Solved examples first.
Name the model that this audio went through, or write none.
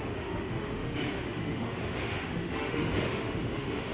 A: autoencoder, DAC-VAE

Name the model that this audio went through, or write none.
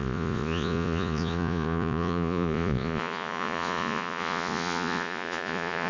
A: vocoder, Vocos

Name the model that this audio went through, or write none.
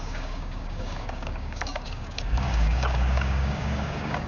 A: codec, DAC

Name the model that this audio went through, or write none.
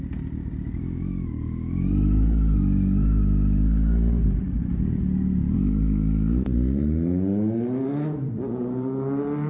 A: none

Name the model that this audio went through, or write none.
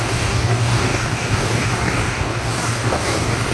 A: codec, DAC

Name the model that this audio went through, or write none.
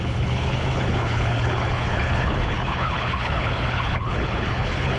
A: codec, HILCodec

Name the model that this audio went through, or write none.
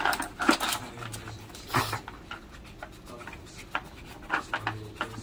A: none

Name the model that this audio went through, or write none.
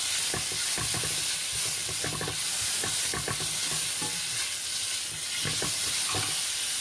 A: none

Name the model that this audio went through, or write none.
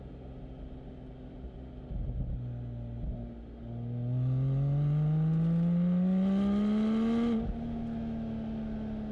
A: none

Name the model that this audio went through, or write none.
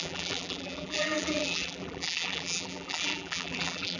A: vocoder, BigVGAN v2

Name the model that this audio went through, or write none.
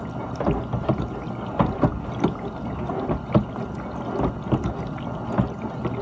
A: none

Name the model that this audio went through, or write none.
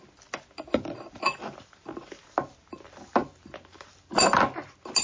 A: none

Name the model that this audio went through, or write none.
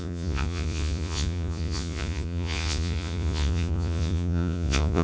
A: vocoder, Vocos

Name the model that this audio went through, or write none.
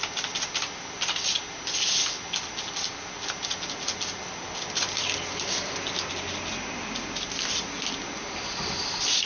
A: none